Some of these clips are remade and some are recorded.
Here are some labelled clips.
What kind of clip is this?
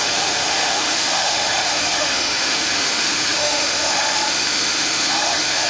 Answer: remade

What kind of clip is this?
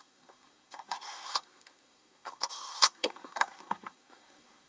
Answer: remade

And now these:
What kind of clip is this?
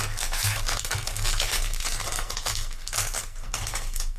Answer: remade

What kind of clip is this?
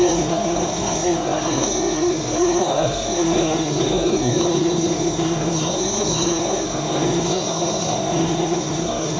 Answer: remade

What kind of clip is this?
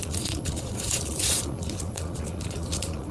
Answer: remade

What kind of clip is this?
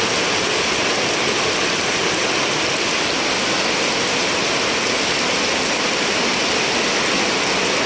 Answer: recorded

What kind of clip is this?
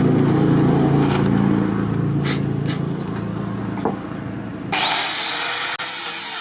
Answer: recorded